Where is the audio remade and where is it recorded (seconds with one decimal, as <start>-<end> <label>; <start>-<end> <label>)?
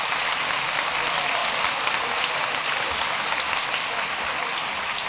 0.0-5.1 recorded